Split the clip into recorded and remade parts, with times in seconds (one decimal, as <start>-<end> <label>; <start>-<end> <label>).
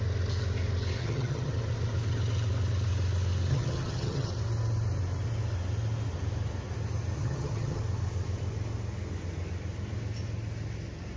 0.0-1.0 recorded; 1.0-1.5 remade; 1.5-3.5 recorded; 3.5-4.3 remade; 4.3-7.2 recorded; 7.2-7.8 remade; 7.8-11.2 recorded